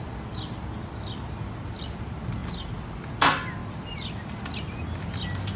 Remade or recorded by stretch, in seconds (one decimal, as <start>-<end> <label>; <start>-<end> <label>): 0.0-5.6 recorded